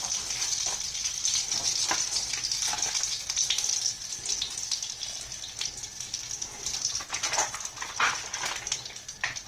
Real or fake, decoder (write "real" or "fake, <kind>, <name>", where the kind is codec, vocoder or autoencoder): real